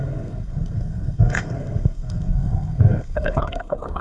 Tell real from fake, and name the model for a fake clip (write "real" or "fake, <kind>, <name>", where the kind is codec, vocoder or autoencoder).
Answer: fake, codec, SNAC